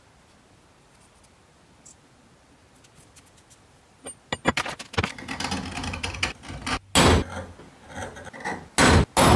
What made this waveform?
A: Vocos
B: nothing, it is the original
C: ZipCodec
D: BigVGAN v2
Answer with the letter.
B